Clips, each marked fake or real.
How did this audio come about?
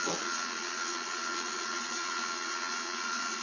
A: fake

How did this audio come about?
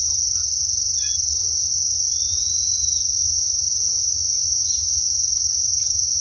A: real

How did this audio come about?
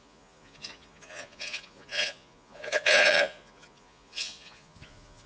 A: fake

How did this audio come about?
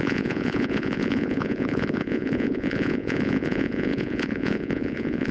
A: fake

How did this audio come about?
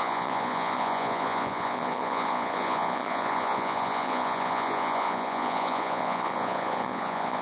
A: fake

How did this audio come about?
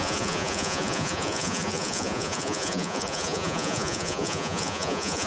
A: fake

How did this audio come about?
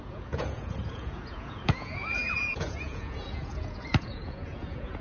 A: fake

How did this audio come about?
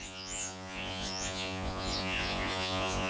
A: fake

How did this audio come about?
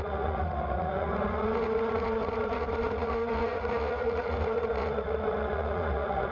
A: fake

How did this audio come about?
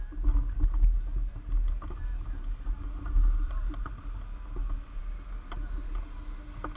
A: real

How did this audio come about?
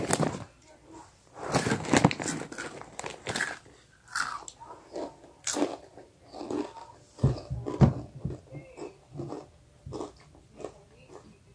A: real